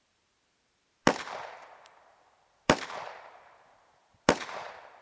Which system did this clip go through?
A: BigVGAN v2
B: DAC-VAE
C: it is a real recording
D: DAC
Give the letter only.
A